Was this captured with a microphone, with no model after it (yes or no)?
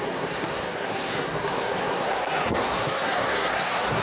no